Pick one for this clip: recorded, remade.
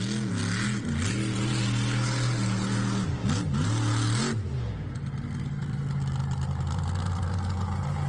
recorded